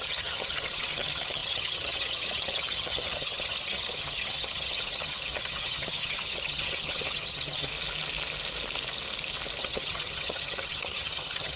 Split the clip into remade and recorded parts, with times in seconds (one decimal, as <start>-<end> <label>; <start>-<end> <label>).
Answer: 0.0-7.7 remade; 7.7-9.6 recorded; 9.6-11.6 remade